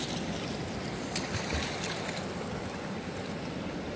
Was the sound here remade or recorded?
recorded